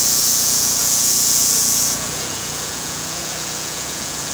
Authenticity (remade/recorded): remade